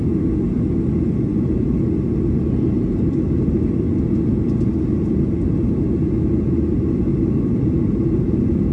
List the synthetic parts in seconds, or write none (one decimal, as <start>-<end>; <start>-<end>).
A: none